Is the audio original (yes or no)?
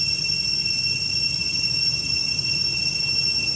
yes